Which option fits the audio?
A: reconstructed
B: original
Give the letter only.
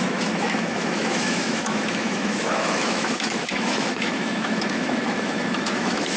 A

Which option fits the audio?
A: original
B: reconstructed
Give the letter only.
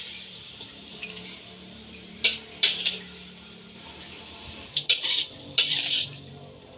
B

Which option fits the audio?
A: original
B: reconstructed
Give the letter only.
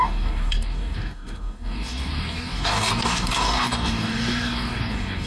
B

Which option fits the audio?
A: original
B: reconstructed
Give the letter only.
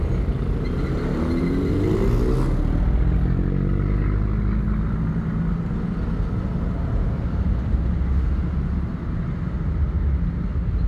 A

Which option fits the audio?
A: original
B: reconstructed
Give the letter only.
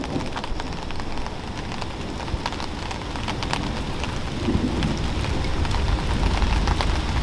A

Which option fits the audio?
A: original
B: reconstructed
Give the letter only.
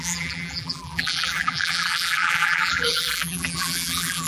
B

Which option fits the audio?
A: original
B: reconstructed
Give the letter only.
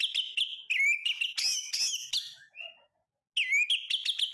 A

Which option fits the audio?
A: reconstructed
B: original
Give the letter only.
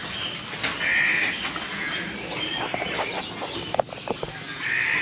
B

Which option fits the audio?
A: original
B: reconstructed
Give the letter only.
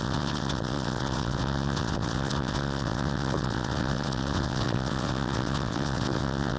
B